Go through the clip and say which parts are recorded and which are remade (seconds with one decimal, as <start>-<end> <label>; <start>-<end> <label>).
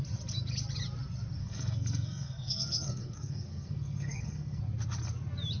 0.0-1.4 recorded; 1.4-4.6 remade; 4.6-5.6 recorded